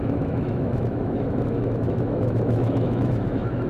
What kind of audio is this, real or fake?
fake